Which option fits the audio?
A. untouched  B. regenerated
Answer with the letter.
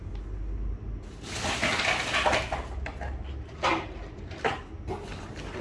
A